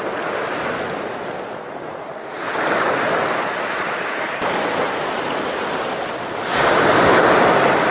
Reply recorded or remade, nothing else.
recorded